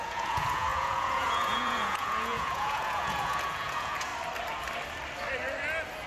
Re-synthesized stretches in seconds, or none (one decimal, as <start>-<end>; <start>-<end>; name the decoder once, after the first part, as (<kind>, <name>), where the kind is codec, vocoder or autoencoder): 0.0-4.1 (vocoder, Vocos)